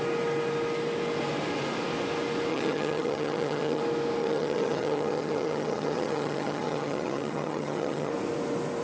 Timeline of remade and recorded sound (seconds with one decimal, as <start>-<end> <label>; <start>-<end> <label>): 0.0-2.5 recorded; 2.5-3.8 remade; 3.8-4.2 recorded; 4.2-8.1 remade; 8.1-8.8 recorded